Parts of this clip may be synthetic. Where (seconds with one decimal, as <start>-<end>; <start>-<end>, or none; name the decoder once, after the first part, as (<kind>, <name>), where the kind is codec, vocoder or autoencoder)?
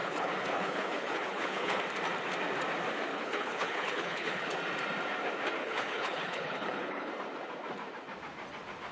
0.0-1.8 (codec, HILCodec); 3.1-4.5; 5.6-7.1